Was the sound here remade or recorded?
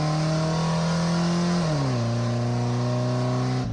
recorded